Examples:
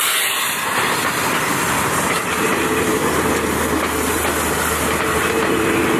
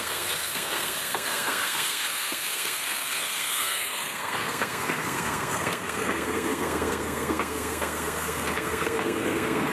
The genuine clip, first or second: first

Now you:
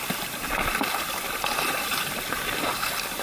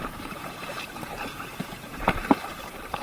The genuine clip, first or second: first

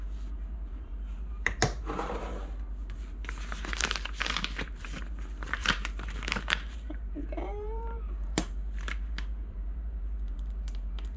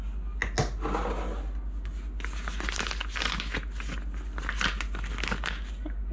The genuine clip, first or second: second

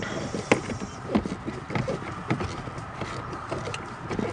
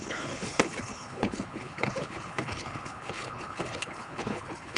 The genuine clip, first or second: first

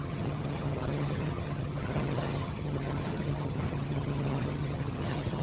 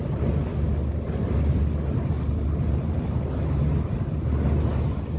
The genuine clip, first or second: second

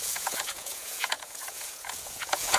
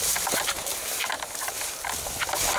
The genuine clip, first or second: second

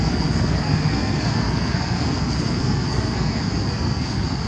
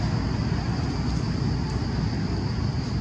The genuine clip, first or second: second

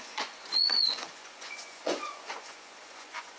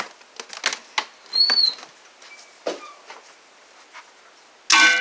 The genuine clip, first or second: second